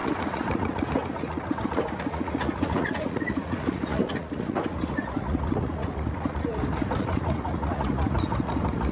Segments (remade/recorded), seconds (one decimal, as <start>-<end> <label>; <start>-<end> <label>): 0.0-8.9 remade